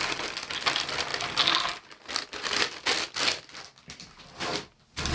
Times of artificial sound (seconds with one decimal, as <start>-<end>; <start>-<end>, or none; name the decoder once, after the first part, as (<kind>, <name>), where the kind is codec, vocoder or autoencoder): none